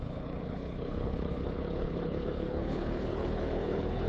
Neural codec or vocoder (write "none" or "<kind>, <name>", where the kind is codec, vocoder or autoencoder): codec, HILCodec